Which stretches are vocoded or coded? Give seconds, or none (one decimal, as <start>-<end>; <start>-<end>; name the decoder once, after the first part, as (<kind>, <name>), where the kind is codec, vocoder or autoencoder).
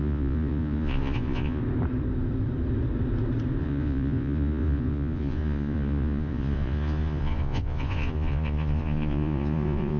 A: 0.0-1.6 (vocoder, Vocos); 3.6-10.0